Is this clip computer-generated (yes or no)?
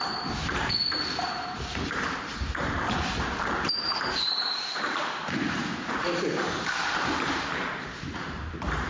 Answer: yes